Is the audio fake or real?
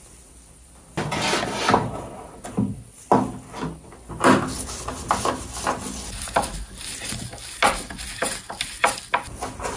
real